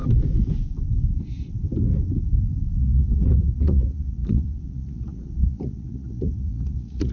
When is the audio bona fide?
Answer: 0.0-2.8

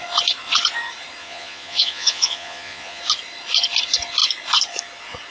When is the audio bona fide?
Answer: 0.0-1.2; 3.0-5.3

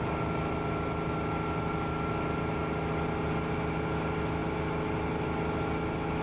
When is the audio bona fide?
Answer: 0.0-6.2

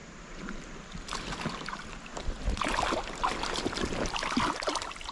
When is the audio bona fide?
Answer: 0.0-5.1

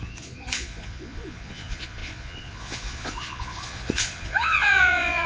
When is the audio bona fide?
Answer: none